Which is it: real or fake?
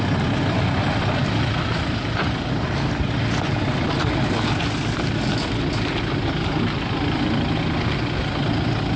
real